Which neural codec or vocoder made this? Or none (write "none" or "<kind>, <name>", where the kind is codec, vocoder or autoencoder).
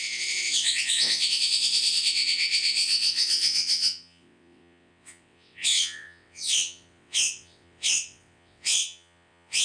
vocoder, WaveNeXt